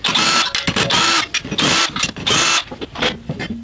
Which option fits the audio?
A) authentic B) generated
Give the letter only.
A